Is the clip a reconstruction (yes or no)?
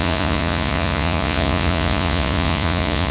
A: yes